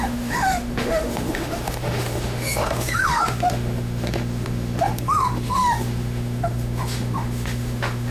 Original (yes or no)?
no